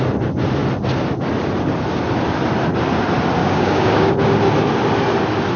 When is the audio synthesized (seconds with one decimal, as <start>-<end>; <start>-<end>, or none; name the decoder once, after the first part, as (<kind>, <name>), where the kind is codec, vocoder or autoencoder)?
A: 3.4-4.1 (codec, DAC)